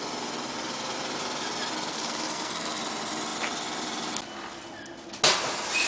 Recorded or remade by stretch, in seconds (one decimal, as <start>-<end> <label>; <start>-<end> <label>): 0.0-1.9 recorded; 1.9-2.8 remade; 2.8-5.9 recorded

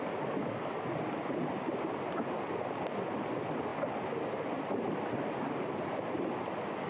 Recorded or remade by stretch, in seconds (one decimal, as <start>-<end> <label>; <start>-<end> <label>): 0.0-6.9 recorded

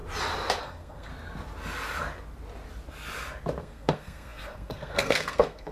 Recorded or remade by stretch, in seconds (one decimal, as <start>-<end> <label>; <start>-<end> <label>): 0.0-0.6 recorded; 0.6-1.1 remade; 1.1-3.6 recorded; 3.6-5.7 remade

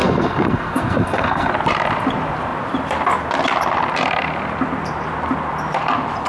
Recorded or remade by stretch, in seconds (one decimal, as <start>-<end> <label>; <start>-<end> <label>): 0.0-1.5 remade; 1.5-6.3 recorded

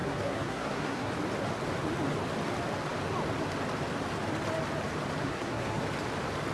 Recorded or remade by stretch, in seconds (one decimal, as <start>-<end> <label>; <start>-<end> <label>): 0.0-1.1 remade; 1.1-5.2 recorded; 5.2-5.8 remade; 5.8-6.5 recorded

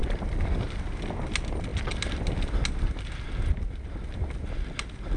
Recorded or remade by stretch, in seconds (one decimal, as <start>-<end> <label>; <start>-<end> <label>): 0.0-5.2 recorded

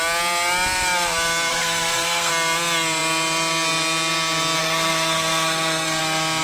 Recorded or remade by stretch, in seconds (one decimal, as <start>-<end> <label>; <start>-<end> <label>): 0.0-1.5 recorded; 1.5-2.3 remade; 2.3-4.6 recorded; 4.6-6.0 remade; 6.0-6.4 recorded

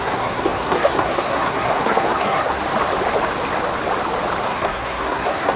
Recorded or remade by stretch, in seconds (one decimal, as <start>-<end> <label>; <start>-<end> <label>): 0.0-2.6 remade; 2.6-4.4 recorded; 4.4-5.6 remade